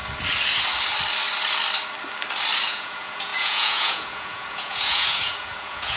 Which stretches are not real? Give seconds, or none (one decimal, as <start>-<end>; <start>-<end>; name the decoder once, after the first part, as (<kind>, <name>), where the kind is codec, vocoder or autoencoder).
2.6-6.0 (vocoder, Vocos)